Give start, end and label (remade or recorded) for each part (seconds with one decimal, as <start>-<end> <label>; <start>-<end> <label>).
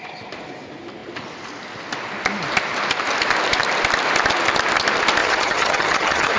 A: 0.0-5.2 recorded; 5.2-6.4 remade